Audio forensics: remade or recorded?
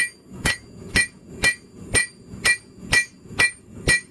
remade